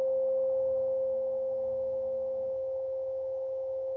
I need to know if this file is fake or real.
real